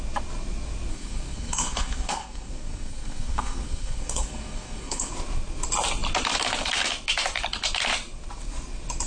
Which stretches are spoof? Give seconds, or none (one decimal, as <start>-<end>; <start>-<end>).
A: 0.9-5.1